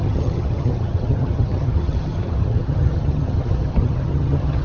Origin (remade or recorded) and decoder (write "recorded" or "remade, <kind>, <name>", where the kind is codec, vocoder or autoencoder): remade, vocoder, HiFi-GAN